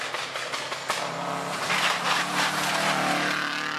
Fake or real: real